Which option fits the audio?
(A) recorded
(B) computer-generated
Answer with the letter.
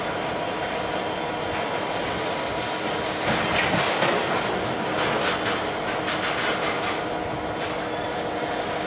A